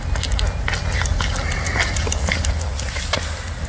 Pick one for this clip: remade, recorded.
recorded